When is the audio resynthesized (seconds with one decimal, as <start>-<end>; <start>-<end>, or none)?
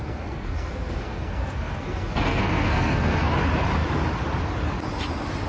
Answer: 0.0-3.3